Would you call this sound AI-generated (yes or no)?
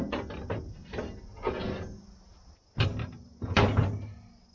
no